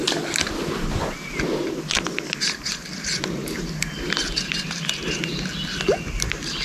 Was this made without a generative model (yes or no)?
yes